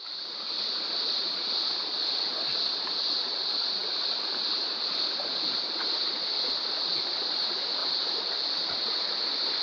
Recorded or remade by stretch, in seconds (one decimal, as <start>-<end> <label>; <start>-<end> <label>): 0.0-9.6 recorded